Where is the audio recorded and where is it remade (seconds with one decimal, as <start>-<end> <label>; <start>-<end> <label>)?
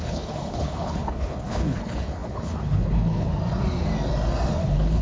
0.0-3.3 remade; 3.3-4.6 recorded; 4.6-5.0 remade